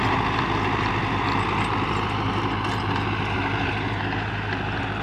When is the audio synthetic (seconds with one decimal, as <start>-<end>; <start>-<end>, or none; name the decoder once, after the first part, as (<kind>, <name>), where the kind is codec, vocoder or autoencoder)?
none